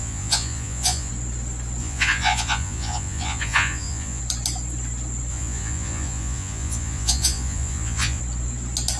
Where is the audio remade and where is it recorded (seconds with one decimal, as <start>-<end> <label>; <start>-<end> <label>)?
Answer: 0.0-1.1 remade; 1.1-1.8 recorded; 1.8-4.2 remade; 4.2-5.3 recorded; 5.3-8.2 remade; 8.2-9.0 recorded